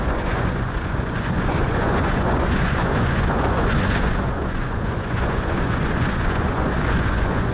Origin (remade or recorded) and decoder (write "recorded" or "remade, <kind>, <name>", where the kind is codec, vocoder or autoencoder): remade, vocoder, Vocos